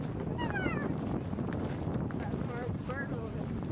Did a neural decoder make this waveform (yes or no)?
yes